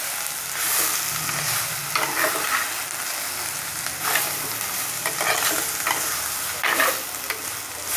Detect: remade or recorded recorded